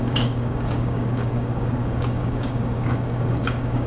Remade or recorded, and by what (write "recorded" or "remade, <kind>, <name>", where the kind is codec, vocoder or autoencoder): remade, codec, DAC